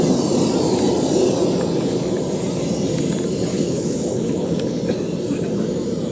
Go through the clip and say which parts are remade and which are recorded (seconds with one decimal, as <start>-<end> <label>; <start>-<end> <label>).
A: 0.0-3.5 recorded; 3.5-4.8 remade; 4.8-6.1 recorded